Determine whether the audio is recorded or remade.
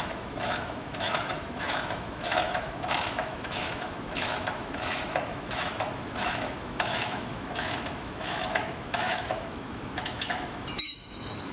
remade